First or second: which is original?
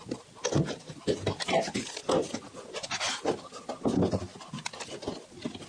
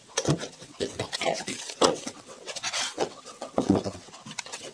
first